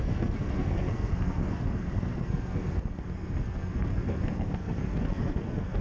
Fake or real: fake